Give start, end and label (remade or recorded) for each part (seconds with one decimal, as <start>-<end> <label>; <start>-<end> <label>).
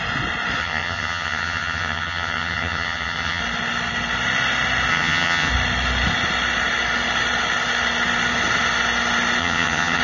0.0-0.6 recorded; 0.6-3.4 remade; 3.4-4.9 recorded; 4.9-5.5 remade; 5.5-9.4 recorded; 9.4-10.0 remade